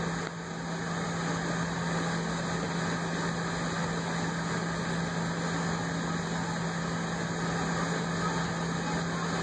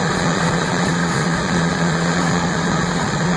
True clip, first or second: first